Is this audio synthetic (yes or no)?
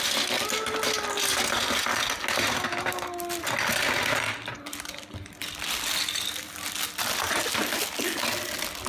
no